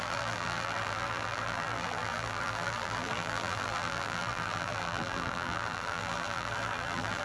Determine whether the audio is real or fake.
fake